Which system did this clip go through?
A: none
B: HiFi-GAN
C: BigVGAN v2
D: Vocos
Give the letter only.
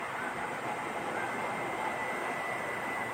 C